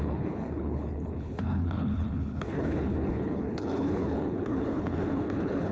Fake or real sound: fake